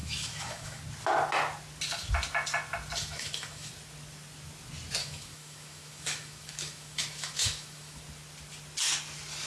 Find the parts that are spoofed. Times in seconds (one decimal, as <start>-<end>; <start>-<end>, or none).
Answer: 0.0-0.8; 3.0-3.7; 5.0-8.0